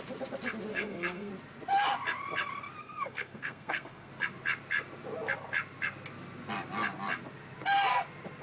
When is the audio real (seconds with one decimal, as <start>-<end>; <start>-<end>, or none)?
0.0-0.7; 1.3-2.8; 4.1-8.4